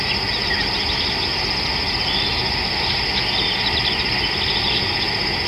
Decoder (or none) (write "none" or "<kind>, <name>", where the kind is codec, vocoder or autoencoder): none